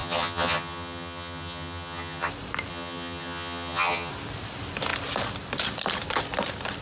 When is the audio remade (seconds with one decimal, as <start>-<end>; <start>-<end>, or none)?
0.0-2.3; 2.7-4.1